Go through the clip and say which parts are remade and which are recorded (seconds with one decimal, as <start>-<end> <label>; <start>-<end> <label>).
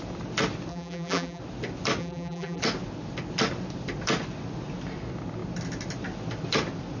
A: 0.0-0.7 recorded; 0.7-1.4 remade; 1.4-2.0 recorded; 2.0-2.6 remade; 2.6-7.0 recorded